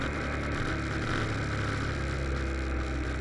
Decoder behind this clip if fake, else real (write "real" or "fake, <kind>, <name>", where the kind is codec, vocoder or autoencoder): real